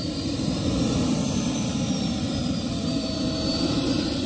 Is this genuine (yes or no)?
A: no